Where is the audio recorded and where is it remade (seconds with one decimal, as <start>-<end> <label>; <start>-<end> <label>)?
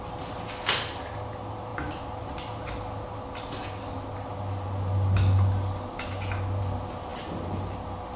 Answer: 0.0-8.2 recorded